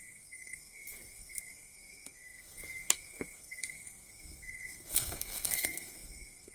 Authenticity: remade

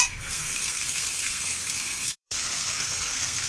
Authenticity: remade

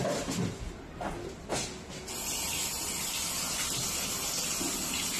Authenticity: recorded